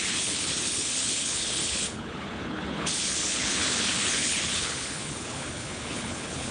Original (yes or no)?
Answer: no